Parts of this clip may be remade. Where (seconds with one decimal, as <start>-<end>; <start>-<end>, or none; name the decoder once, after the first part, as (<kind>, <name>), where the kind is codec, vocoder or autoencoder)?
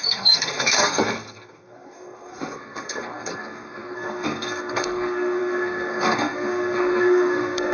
0.0-7.7 (codec, SNAC)